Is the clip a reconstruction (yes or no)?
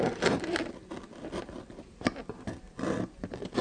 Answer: no